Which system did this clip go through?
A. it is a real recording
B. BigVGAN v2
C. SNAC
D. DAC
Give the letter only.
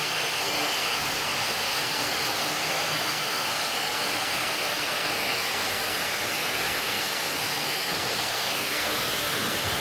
C